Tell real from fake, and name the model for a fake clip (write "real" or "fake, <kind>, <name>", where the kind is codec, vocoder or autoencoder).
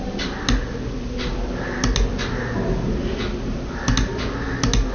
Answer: real